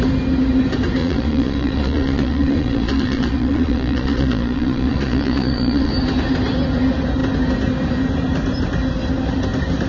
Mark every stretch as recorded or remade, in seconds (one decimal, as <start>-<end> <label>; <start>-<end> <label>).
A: 0.0-1.0 recorded; 1.0-5.9 remade; 5.9-9.9 recorded